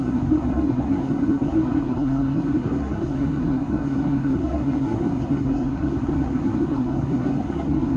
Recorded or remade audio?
remade